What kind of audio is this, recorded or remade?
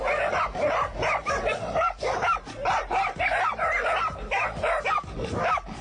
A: recorded